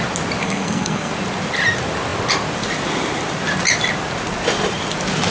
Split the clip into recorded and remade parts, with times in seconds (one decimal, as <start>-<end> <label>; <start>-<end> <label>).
0.0-0.4 recorded; 0.4-1.1 remade; 1.1-5.3 recorded